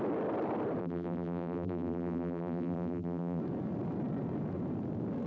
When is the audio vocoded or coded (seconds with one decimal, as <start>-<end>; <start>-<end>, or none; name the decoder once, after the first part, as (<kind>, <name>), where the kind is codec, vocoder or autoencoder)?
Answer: 0.8-3.4 (vocoder, BigVGAN v2)